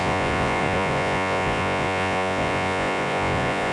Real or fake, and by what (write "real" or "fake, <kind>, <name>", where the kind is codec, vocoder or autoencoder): fake, vocoder, Vocos